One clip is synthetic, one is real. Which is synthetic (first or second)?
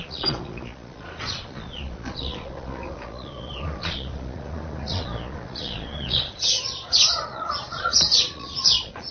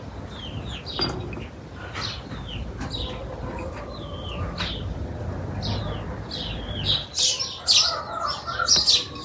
first